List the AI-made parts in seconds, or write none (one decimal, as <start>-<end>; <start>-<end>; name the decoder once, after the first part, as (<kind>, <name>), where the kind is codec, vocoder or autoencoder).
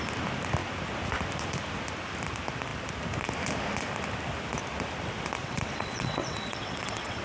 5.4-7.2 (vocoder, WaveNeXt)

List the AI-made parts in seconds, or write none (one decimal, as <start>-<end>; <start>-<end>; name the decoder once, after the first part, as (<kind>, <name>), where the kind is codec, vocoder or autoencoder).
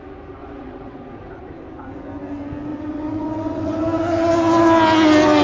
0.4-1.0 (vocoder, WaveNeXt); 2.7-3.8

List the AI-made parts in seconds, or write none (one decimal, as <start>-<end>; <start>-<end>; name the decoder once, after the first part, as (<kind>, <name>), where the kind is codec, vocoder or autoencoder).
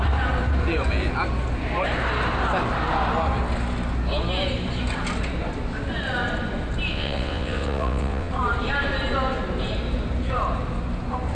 6.9-8.3 (vocoder, WaveNeXt)